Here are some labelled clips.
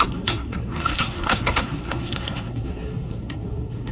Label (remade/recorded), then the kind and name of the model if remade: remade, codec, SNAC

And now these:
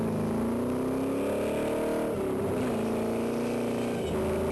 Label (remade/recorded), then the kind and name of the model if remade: recorded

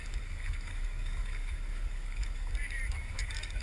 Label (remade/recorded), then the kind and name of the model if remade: remade, codec, DAC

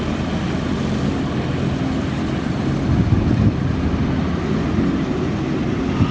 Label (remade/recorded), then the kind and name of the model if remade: recorded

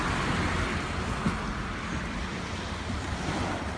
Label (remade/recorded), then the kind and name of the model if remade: recorded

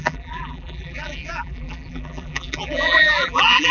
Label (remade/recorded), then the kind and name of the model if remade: remade, vocoder, BigVGAN v2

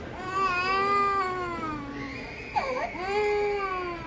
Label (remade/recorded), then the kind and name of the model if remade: recorded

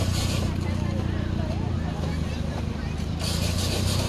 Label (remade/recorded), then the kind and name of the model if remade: recorded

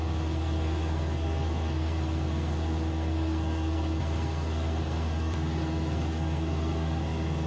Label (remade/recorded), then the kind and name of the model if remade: remade, codec, SNAC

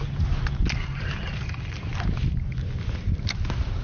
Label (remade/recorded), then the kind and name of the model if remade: recorded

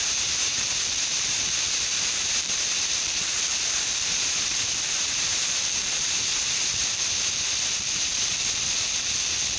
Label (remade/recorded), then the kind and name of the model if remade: remade, vocoder, BigVGAN v2